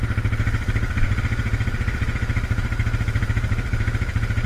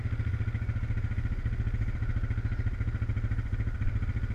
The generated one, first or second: first